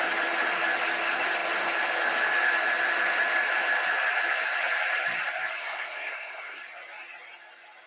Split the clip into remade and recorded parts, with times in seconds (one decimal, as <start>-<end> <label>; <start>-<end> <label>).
0.0-5.6 recorded; 5.6-6.6 remade; 6.6-7.9 recorded